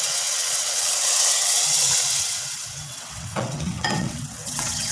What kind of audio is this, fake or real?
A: fake